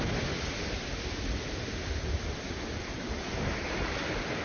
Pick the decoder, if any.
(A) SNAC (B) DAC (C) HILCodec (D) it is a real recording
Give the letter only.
D